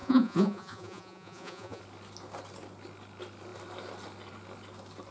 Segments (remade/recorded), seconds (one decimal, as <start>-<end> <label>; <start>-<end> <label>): 0.0-1.8 remade; 1.8-5.1 recorded

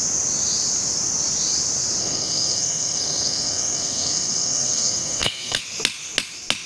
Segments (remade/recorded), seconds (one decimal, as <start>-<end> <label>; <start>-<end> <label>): 0.0-2.0 recorded; 2.0-5.6 remade; 5.6-6.7 recorded

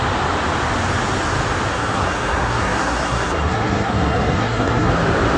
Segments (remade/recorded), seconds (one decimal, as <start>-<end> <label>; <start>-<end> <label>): 0.0-1.7 recorded; 1.7-4.9 remade; 4.9-5.4 recorded

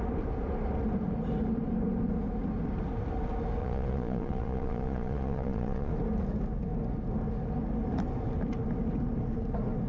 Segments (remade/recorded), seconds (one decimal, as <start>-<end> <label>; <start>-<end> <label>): 0.0-3.6 recorded; 3.6-5.9 remade; 5.9-9.9 recorded

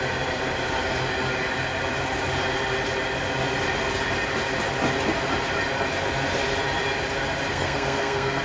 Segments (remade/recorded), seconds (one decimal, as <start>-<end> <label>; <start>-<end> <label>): 0.0-7.5 recorded; 7.5-8.4 remade

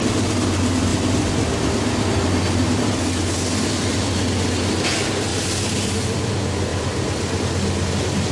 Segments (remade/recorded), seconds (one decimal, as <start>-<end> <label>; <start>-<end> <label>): 0.0-5.3 recorded; 5.3-6.3 remade; 6.3-6.7 recorded; 6.7-7.4 remade; 7.4-8.3 recorded

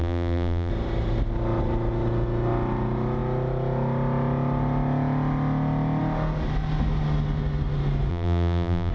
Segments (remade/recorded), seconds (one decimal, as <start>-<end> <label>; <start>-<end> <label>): 0.0-0.7 remade; 0.7-8.1 recorded; 8.1-8.9 remade

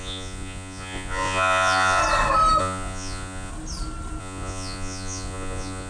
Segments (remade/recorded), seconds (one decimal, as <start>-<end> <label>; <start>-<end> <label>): 0.0-2.0 remade; 2.0-2.6 recorded; 2.6-3.5 remade; 3.5-4.2 recorded; 4.2-5.9 remade